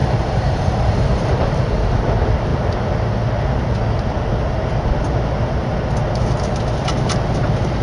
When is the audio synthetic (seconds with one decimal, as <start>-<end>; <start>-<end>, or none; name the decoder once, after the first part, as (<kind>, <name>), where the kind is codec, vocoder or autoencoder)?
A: 0.0-2.5 (vocoder, BigVGAN v2); 6.9-7.8